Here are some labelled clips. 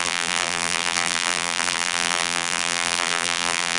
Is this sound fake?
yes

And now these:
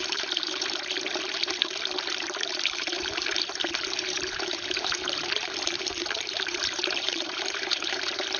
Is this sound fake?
yes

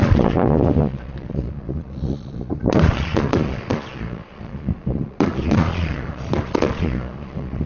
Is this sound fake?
yes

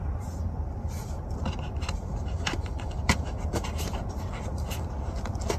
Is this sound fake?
no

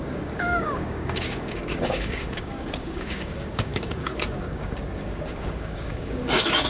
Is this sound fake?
yes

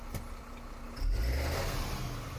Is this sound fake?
no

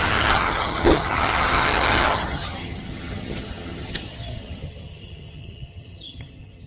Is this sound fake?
yes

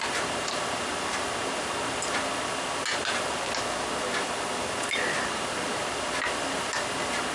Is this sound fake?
no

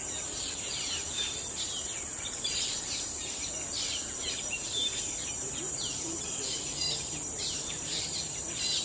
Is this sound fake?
yes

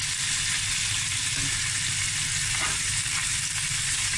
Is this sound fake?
no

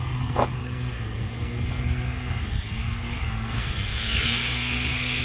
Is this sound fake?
yes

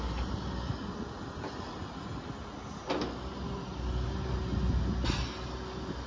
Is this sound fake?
no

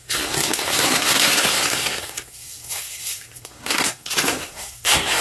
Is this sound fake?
yes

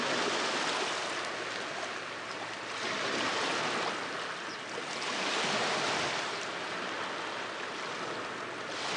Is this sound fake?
no